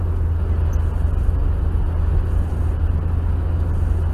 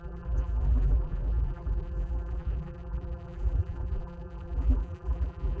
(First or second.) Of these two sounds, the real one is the first